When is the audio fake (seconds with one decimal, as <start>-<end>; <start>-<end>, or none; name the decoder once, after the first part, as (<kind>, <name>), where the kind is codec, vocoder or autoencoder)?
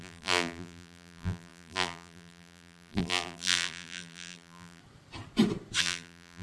0.0-4.8 (vocoder, BigVGAN v2); 5.8-6.4